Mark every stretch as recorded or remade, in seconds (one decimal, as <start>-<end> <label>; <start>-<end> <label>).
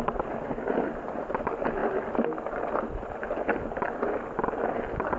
0.0-5.2 recorded